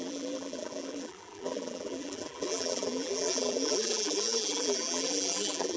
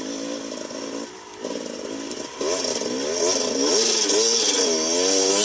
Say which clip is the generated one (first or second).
first